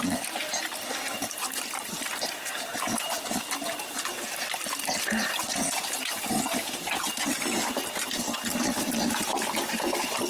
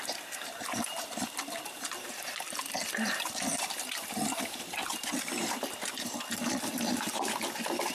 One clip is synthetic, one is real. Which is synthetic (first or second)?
second